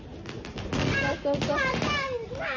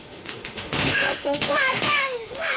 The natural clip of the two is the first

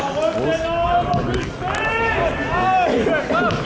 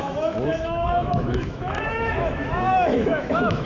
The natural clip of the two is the first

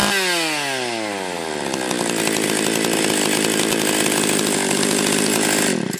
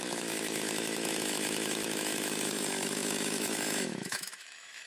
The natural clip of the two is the first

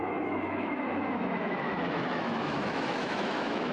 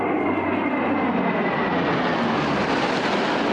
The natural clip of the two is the second